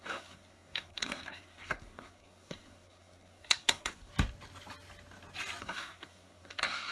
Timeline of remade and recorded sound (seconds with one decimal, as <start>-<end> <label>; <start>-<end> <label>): 0.0-4.1 remade; 4.1-5.6 recorded; 5.6-6.9 remade